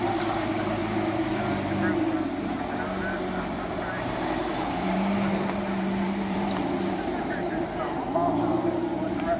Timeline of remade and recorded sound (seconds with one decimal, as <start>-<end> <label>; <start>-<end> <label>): 0.0-0.8 remade; 0.8-2.4 recorded; 2.4-8.1 remade; 8.1-8.8 recorded; 8.8-9.4 remade

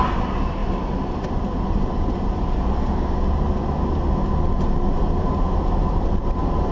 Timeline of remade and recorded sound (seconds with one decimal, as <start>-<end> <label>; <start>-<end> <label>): 0.0-6.7 recorded

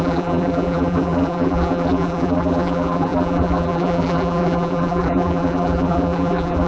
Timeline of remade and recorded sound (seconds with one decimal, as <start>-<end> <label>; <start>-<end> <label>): 0.0-6.7 remade

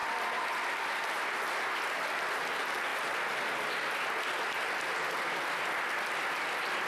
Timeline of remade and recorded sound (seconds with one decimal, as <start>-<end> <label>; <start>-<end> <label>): 0.0-6.9 recorded

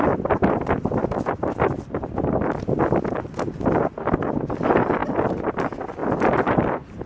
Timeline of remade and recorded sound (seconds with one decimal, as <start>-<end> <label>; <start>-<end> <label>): 0.0-1.0 recorded; 1.0-2.4 remade; 2.4-6.0 recorded; 6.0-7.1 remade

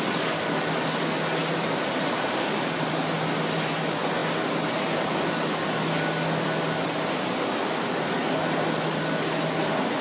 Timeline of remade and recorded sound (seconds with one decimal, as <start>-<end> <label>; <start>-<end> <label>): 0.0-1.4 recorded; 1.4-2.9 remade; 2.9-10.0 recorded